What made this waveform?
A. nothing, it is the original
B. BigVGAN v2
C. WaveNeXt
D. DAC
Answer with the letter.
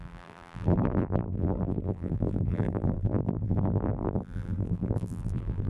B